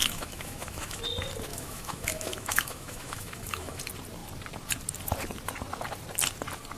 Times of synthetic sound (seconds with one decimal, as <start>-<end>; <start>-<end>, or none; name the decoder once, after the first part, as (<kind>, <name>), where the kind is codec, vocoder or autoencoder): 0.0-1.0 (autoencoder, DAC-VAE); 1.5-3.8

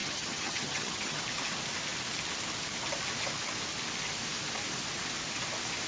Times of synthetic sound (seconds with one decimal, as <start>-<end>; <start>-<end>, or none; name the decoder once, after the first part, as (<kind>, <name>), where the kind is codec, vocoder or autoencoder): 0.0-1.2 (vocoder, HiFi-GAN)

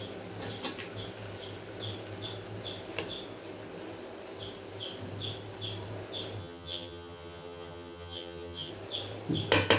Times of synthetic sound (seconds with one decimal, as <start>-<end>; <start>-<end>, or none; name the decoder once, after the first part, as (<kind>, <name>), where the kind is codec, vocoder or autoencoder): 6.4-8.7 (vocoder, HiFi-GAN)

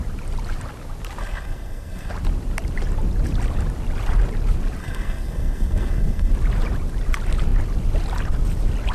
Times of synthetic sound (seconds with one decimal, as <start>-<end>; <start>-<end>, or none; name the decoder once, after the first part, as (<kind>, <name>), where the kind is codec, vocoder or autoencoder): 1.2-2.1 (codec, SNAC); 4.8-6.3

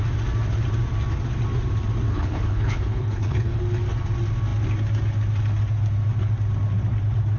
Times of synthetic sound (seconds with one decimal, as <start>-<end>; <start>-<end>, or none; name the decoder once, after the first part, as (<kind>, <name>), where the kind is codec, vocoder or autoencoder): 2.1-3.6 (codec, HILCodec)

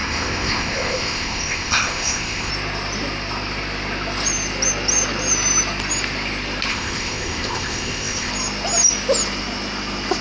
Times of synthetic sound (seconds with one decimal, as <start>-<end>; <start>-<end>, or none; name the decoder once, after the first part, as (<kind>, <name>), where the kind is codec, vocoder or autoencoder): 0.0-2.5 (codec, ZipCodec); 6.7-8.3